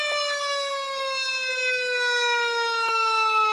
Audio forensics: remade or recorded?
recorded